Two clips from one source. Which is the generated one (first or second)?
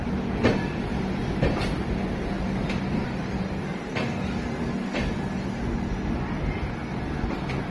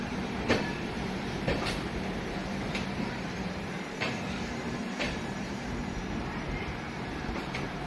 second